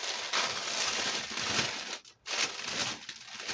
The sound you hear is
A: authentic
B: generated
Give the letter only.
A